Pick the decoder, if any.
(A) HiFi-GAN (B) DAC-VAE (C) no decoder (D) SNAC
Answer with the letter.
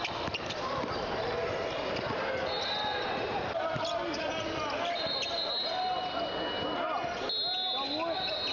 C